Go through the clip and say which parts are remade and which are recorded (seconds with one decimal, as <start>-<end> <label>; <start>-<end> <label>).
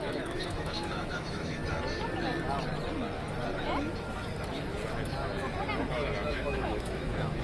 0.0-1.6 remade; 1.6-5.9 recorded; 5.9-7.4 remade